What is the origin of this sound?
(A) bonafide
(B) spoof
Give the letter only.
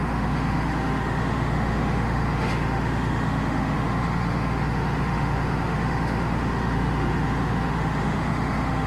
B